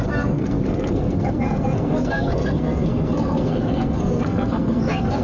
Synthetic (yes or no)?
yes